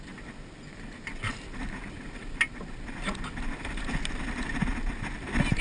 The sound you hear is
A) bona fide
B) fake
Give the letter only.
A